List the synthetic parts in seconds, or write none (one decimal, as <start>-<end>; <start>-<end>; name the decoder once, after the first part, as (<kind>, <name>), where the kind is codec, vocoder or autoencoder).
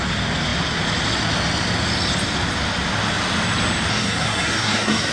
3.9-5.1 (codec, SNAC)